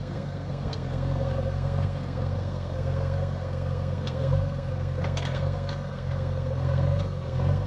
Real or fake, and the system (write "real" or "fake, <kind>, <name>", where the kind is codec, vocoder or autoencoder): fake, codec, SNAC